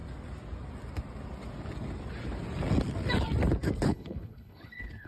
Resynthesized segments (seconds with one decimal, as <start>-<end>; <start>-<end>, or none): 3.9-5.1